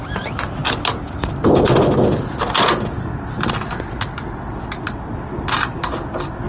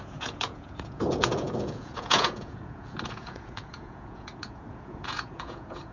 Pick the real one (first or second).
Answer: first